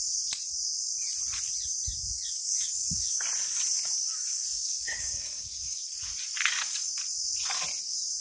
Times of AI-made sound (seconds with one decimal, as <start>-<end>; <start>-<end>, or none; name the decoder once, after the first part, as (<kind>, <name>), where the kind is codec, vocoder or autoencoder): 2.5-3.1 (codec, DAC); 4.5-5.8